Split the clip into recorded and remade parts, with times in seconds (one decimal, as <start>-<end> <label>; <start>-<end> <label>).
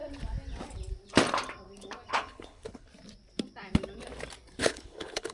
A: 0.0-2.1 recorded; 2.1-2.9 remade; 2.9-4.6 recorded; 4.6-5.3 remade